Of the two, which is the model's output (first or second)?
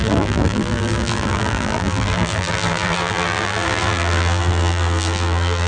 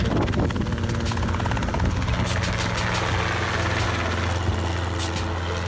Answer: first